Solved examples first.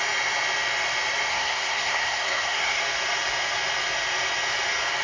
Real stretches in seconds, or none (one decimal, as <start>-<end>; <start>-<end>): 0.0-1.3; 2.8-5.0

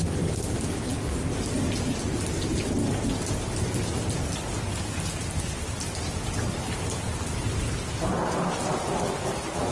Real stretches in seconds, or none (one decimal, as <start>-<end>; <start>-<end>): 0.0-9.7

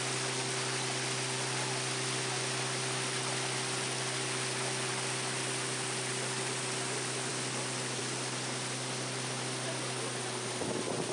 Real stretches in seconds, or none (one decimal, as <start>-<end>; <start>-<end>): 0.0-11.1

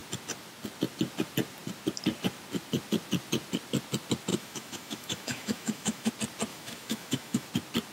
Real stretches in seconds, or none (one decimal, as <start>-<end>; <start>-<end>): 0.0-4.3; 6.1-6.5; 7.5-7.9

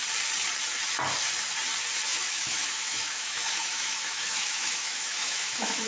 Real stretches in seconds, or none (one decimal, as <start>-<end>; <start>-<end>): 0.0-2.1